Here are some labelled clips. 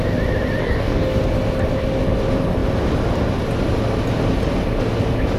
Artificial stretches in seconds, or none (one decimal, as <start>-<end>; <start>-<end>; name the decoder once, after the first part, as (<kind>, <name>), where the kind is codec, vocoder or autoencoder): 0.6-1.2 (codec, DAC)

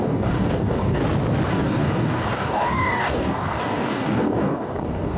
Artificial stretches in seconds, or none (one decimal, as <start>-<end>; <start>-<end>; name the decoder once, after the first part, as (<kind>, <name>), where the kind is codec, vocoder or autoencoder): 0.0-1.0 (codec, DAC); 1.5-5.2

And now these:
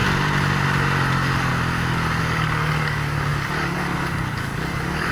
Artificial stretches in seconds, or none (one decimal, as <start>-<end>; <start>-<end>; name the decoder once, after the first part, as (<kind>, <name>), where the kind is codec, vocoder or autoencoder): 1.1-1.5 (codec, DAC); 2.2-5.1